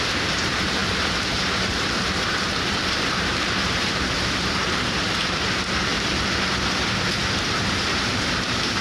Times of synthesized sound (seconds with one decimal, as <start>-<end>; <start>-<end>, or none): 0.0-5.9; 7.5-8.8